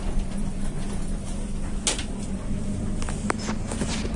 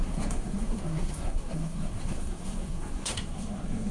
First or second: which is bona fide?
first